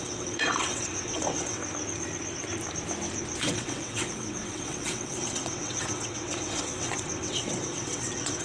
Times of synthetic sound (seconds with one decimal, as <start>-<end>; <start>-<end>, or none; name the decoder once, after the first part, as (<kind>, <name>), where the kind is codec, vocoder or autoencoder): 0.0-1.6 (vocoder, WaveNeXt); 3.4-8.4